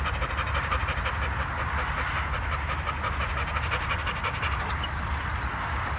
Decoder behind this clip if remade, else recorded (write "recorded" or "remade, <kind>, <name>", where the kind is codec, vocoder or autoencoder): recorded